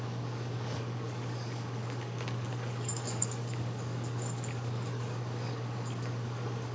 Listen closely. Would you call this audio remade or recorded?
remade